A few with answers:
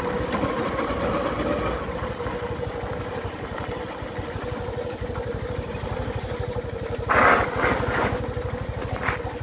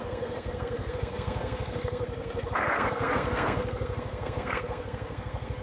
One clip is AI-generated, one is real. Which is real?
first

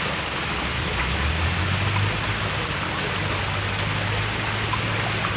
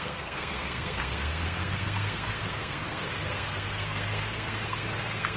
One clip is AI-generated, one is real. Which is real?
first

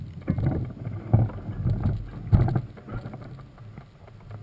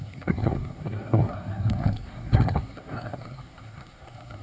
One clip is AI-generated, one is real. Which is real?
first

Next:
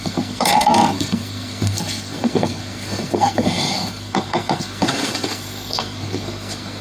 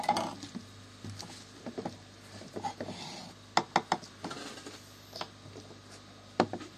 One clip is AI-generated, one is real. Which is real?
second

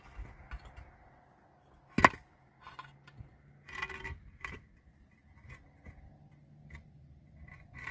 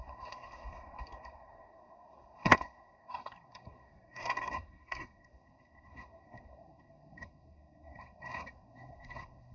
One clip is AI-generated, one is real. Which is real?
first